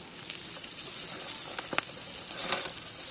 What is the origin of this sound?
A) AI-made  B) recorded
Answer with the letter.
B